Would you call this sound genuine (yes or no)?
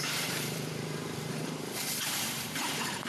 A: no